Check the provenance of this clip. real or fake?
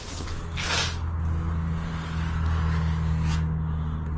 real